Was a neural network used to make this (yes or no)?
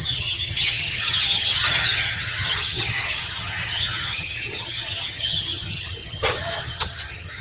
yes